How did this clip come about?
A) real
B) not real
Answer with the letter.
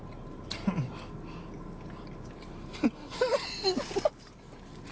A